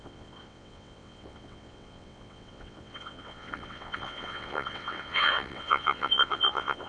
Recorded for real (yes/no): no